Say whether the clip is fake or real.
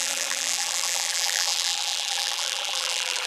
fake